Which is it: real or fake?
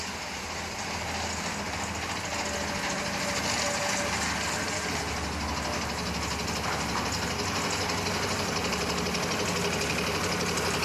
real